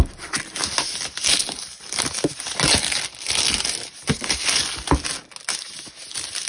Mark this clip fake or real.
real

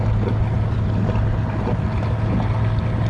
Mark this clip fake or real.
real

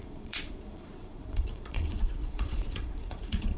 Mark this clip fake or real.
fake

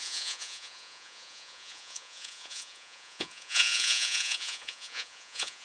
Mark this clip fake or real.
fake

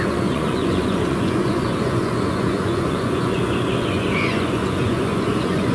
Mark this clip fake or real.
fake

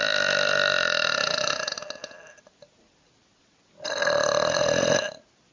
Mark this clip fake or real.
real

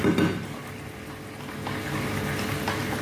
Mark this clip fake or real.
real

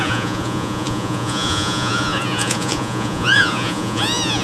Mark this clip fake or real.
fake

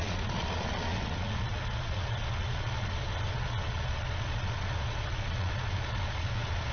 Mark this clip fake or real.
fake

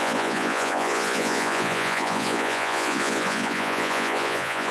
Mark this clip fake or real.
fake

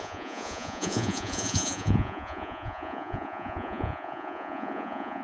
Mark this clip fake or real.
fake